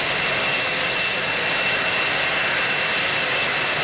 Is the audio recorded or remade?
recorded